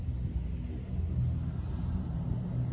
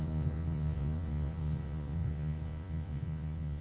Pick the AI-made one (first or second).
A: second